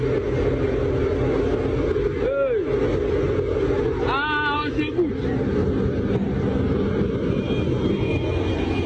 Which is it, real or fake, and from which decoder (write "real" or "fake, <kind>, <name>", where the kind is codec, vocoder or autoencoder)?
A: real